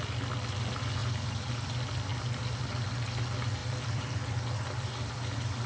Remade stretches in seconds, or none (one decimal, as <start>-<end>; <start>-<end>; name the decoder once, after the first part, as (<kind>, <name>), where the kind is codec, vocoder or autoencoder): 1.0-1.5 (vocoder, BigVGAN v2); 3.6-5.7